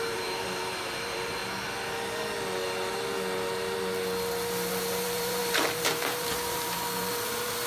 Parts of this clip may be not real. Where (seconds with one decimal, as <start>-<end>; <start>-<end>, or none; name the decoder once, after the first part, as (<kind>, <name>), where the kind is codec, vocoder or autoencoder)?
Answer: 0.0-1.4 (vocoder, BigVGAN v2); 4.7-7.7